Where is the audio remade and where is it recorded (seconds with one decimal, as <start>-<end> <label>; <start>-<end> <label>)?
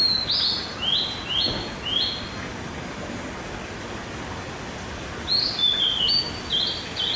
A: 0.0-7.2 recorded